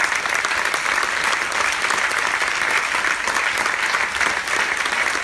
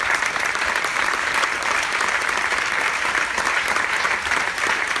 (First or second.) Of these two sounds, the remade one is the second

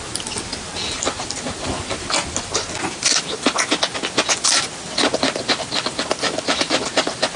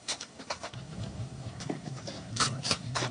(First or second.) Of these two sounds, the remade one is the second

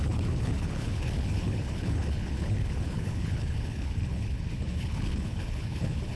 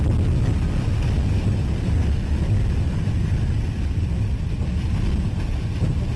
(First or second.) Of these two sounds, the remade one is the first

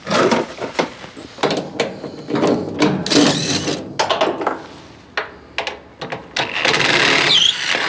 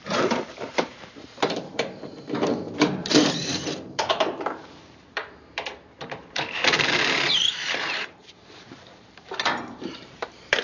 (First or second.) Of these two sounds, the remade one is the second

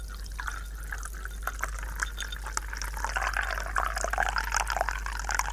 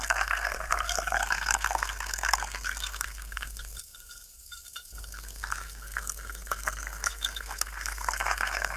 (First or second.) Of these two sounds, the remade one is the second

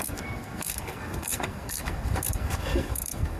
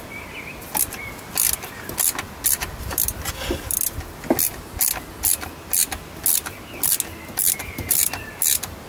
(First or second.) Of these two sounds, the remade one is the first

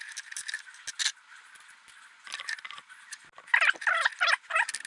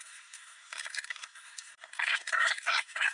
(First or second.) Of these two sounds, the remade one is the second